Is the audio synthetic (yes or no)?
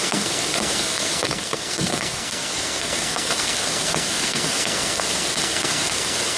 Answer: yes